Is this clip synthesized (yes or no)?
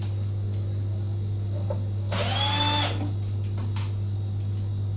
no